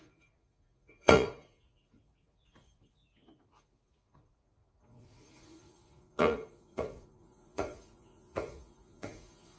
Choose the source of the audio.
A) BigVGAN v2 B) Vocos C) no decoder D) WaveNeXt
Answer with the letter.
B